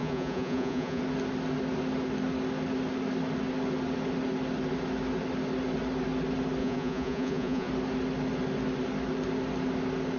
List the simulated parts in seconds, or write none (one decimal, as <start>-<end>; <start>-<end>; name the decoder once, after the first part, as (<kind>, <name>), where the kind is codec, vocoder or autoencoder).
0.0-1.0 (vocoder, Vocos); 6.6-7.7